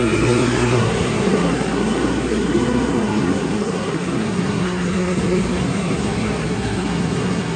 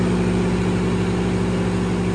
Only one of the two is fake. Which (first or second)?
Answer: first